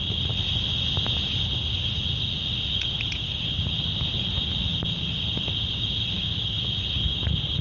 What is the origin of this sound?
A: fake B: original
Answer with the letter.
B